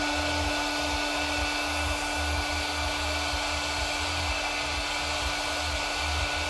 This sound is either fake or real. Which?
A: real